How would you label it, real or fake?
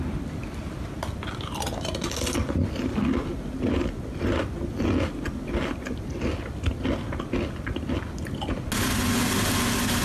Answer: real